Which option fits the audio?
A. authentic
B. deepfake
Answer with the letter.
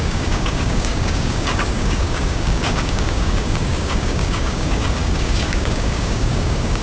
B